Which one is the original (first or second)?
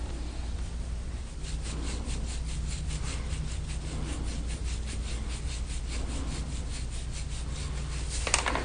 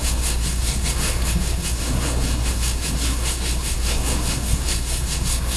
first